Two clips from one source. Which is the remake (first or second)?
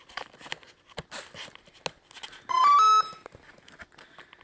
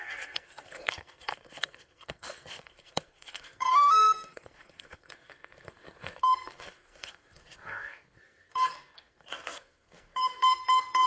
second